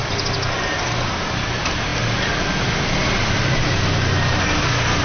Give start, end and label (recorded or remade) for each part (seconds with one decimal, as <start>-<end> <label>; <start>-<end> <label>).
0.0-5.0 recorded